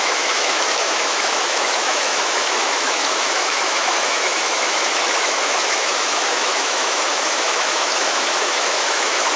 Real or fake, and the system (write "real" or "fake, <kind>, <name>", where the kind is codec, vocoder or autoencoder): fake, autoencoder, DAC-VAE